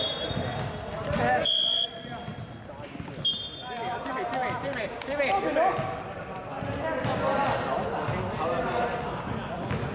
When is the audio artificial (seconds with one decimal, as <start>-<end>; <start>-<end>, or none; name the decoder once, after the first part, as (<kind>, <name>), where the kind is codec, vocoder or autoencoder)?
none